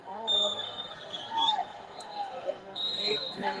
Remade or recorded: remade